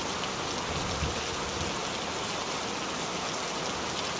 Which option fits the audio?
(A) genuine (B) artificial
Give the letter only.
A